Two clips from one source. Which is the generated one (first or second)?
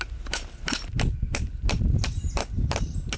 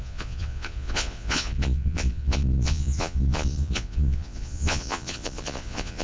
second